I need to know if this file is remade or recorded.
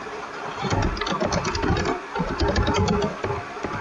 remade